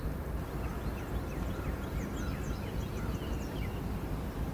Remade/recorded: recorded